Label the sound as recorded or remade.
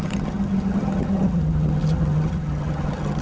remade